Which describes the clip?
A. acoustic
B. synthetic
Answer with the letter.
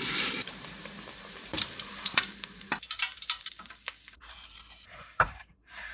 B